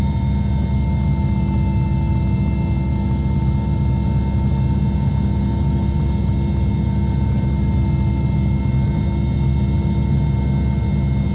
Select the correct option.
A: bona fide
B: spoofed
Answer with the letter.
A